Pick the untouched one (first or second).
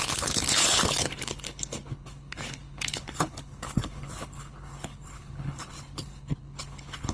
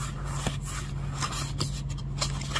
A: second